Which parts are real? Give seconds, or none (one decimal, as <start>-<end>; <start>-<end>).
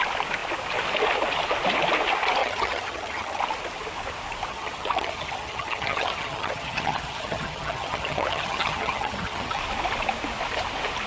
0.0-2.4; 3.4-4.5; 9.6-11.1